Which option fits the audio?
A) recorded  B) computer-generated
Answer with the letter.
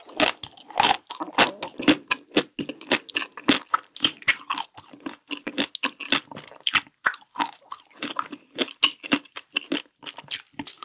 A